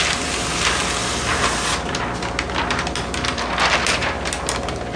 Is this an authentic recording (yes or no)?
yes